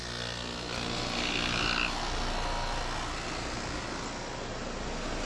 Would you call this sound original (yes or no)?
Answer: yes